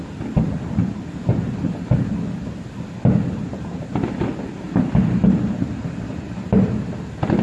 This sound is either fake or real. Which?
real